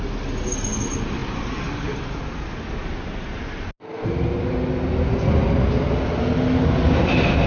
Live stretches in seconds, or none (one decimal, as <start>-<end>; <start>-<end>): 0.0-7.5

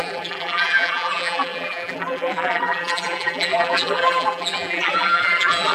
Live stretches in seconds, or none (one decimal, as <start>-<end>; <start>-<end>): none

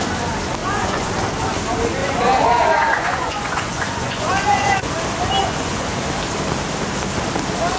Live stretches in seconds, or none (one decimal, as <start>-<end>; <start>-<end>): 0.0-0.6; 1.1-2.0; 4.9-5.4; 6.0-7.8

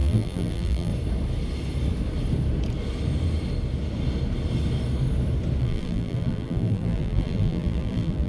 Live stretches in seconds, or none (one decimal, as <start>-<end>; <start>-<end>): 0.9-5.6